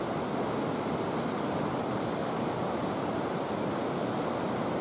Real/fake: real